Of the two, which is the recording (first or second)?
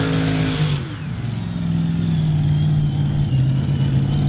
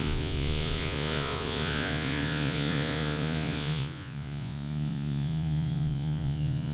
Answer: first